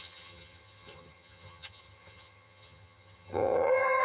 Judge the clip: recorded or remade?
remade